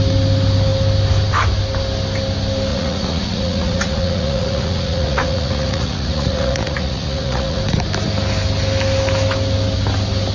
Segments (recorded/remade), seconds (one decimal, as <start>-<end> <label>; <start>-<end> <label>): 0.0-2.7 recorded; 2.7-7.6 remade; 7.6-10.3 recorded